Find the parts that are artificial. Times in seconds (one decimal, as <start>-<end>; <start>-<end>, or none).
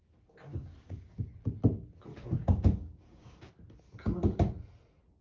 0.0-1.3; 2.1-3.5